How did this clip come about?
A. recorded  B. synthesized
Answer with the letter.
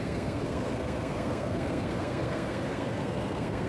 B